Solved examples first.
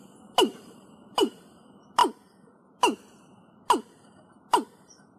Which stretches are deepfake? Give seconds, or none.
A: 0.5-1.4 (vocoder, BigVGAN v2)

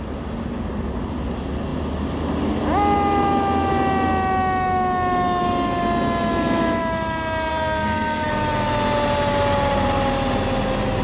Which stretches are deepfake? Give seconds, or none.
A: 7.5-8.3 (codec, SNAC)

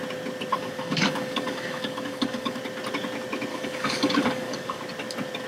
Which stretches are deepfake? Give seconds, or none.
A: 0.5-2.6 (codec, DAC); 3.5-4.8

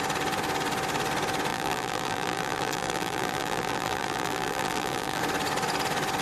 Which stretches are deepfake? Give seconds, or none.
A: 1.5-5.2 (vocoder, BigVGAN v2)